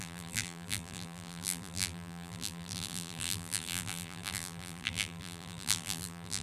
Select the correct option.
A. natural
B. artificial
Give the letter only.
B